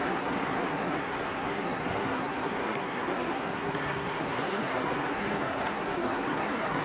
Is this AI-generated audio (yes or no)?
yes